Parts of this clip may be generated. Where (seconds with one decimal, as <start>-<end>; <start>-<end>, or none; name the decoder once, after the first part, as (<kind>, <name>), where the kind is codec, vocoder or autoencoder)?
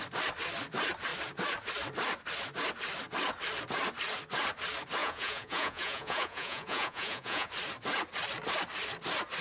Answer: 5.0-7.5 (vocoder, Vocos)